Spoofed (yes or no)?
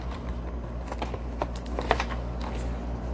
no